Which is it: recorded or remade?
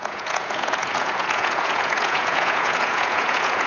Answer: remade